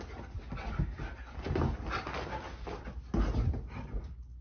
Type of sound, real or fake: real